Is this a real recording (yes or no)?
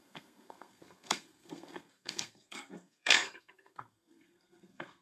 no